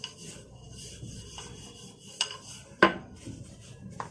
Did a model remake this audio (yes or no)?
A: no